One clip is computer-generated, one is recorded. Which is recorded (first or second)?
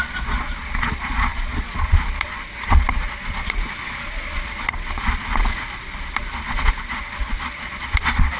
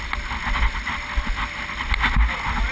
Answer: second